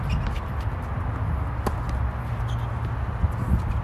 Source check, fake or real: real